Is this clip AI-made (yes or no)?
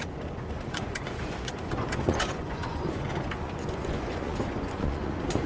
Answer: yes